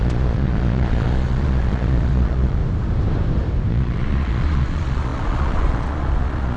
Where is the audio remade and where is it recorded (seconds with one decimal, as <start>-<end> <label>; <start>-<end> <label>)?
0.0-2.6 remade; 2.6-3.7 recorded; 3.7-6.6 remade